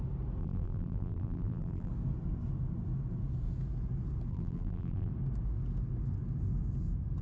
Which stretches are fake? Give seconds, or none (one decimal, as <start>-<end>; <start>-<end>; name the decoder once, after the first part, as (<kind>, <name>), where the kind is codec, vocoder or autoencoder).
0.4-1.9 (vocoder, BigVGAN v2); 4.3-5.1